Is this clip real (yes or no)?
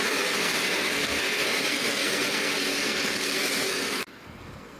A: no